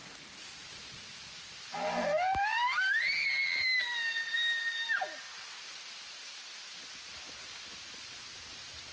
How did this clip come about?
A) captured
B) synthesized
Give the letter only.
A